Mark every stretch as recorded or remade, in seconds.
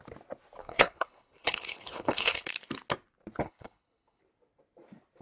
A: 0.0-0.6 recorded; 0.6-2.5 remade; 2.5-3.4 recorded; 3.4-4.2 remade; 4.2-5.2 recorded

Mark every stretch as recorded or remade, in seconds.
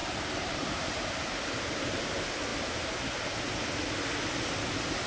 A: 0.0-5.1 recorded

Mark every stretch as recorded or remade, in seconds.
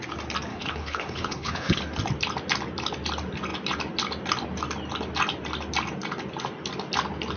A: 0.0-0.5 recorded; 0.5-1.8 remade; 1.8-7.4 recorded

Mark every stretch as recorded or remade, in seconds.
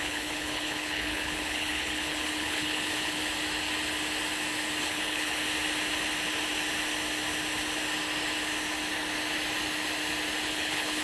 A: 0.0-3.2 remade; 3.2-4.8 recorded; 4.8-5.4 remade; 5.4-10.5 recorded; 10.5-11.0 remade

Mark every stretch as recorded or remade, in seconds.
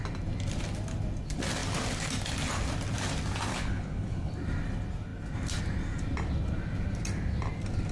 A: 0.0-3.5 recorded; 3.5-4.3 remade; 4.3-7.9 recorded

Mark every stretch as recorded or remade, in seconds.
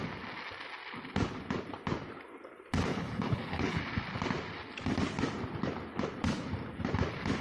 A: 0.0-2.9 recorded; 2.9-3.8 remade; 3.8-7.4 recorded